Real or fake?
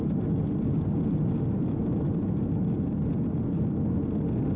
real